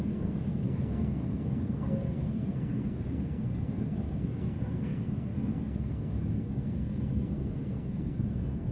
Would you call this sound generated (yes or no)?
yes